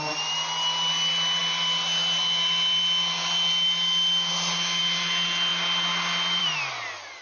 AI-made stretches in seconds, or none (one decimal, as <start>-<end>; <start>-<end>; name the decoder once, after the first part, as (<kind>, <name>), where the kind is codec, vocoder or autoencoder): none